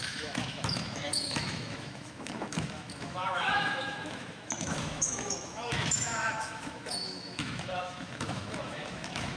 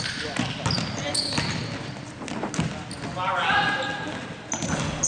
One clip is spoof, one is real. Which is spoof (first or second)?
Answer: first